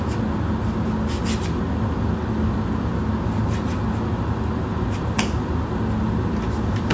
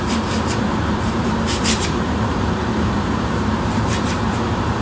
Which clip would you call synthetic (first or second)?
second